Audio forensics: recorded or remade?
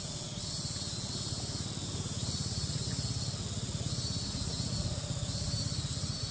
recorded